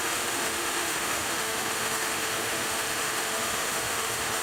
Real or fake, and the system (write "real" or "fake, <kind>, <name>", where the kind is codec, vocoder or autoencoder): fake, autoencoder, DAC-VAE